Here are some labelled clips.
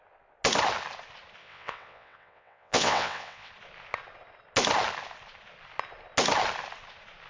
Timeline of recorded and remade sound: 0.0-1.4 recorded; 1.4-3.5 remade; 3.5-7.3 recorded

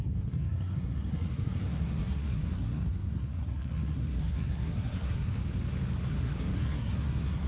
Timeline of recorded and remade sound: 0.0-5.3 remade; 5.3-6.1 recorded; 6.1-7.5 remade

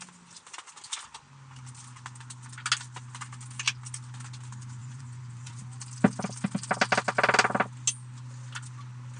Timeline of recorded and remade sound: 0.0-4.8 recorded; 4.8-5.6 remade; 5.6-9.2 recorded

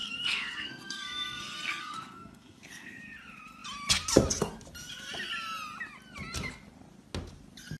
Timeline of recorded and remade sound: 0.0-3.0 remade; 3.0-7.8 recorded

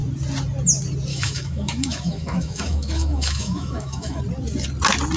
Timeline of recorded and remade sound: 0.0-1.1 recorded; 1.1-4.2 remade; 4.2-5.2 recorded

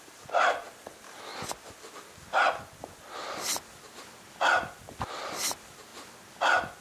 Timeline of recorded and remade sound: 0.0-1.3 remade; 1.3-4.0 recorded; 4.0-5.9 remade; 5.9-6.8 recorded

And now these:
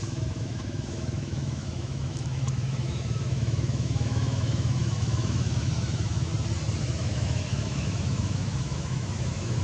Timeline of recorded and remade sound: 0.0-6.3 remade; 6.3-6.8 recorded; 6.8-9.6 remade